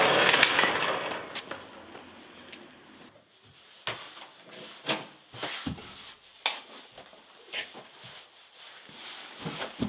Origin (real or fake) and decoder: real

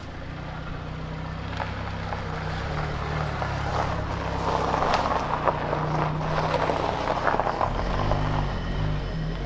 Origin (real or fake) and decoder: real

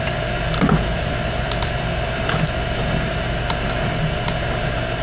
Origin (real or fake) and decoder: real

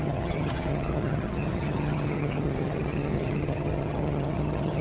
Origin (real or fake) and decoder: fake, vocoder, HiFi-GAN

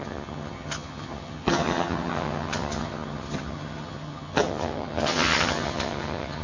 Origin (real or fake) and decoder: fake, vocoder, HiFi-GAN